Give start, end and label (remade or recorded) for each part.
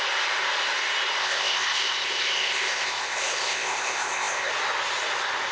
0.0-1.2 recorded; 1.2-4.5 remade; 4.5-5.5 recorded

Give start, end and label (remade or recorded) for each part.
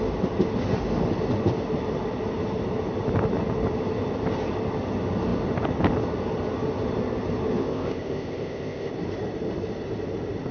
0.0-7.6 recorded; 7.6-8.9 remade; 8.9-10.5 recorded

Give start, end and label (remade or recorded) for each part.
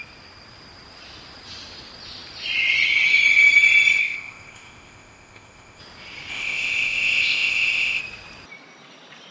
0.0-4.0 recorded; 4.0-5.8 remade; 5.8-6.3 recorded; 6.3-8.0 remade; 8.0-9.3 recorded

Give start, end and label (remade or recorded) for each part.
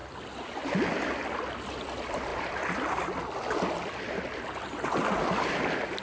0.0-6.0 recorded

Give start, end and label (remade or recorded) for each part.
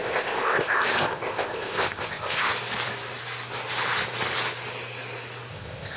0.0-2.5 remade; 2.5-5.5 recorded; 5.5-6.0 remade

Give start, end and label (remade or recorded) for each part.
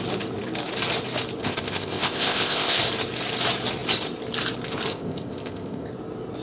0.0-1.4 recorded; 1.4-2.8 remade; 2.8-4.9 recorded; 4.9-5.9 remade; 5.9-6.4 recorded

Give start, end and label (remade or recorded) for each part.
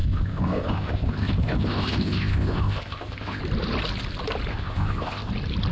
0.0-3.4 remade; 3.4-4.5 recorded; 4.5-5.3 remade; 5.3-5.7 recorded